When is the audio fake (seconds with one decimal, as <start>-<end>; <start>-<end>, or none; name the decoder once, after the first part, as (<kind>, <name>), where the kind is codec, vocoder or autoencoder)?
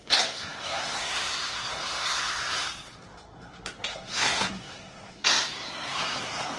0.0-6.6 (codec, SNAC)